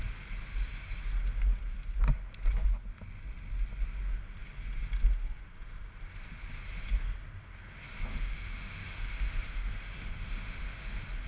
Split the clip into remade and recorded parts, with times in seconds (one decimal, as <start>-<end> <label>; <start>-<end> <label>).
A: 0.0-8.1 recorded; 8.1-10.9 remade; 10.9-11.3 recorded